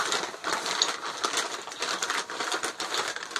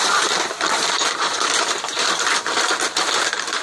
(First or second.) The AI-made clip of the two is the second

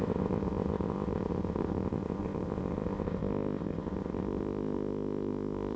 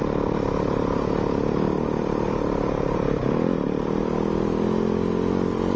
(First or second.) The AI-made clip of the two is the first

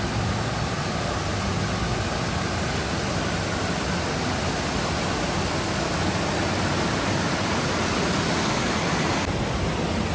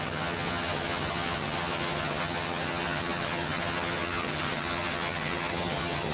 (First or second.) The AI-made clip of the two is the second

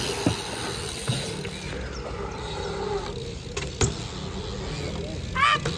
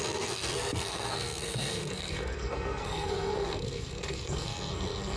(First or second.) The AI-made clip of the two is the second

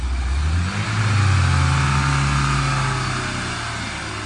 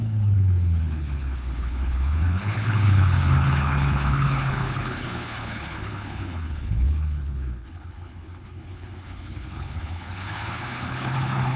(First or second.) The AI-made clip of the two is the second